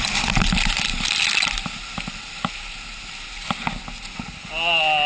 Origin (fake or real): real